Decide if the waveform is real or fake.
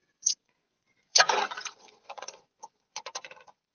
fake